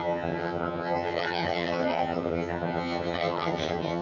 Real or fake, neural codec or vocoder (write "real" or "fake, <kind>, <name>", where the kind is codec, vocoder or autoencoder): fake, vocoder, HiFi-GAN